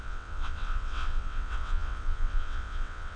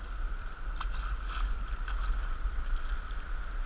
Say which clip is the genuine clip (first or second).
second